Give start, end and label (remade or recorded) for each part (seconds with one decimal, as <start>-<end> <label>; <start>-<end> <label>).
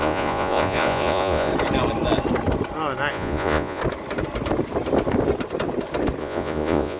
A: 0.0-1.5 remade; 1.5-3.1 recorded; 3.1-3.8 remade; 3.8-6.2 recorded; 6.2-7.0 remade